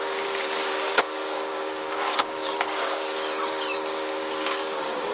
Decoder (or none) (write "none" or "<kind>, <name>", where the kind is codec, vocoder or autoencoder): codec, DAC